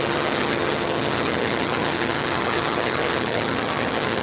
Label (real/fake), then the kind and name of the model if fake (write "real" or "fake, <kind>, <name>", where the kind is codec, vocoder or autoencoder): fake, vocoder, HiFi-GAN